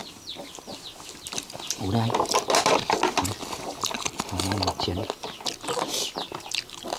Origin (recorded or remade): recorded